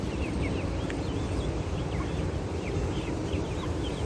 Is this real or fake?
fake